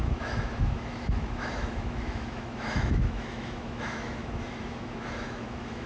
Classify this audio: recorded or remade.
remade